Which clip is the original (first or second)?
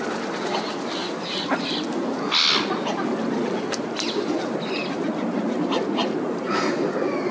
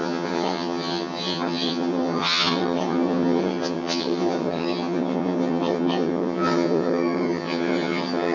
first